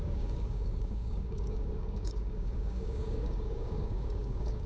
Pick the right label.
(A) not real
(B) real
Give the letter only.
A